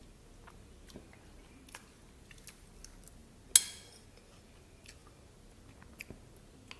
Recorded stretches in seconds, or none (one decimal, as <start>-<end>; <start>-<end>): 0.0-6.8